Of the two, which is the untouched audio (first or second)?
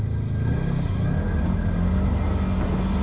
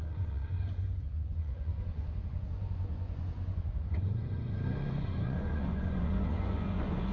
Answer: first